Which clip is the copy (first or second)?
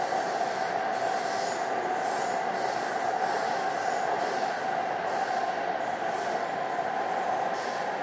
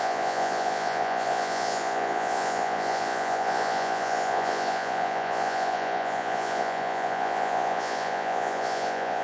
second